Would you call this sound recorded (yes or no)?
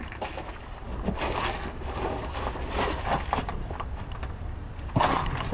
yes